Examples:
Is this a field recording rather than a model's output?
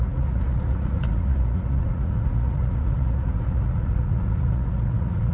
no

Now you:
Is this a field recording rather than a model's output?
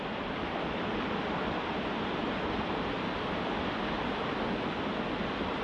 yes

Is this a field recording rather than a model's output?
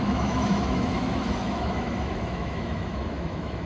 no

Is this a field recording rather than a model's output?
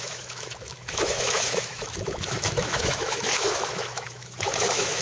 no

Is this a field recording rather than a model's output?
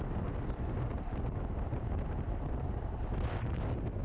yes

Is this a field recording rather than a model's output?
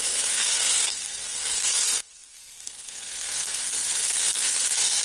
no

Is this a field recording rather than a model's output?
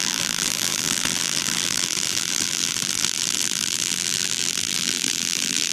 no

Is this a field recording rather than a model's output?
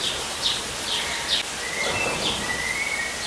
yes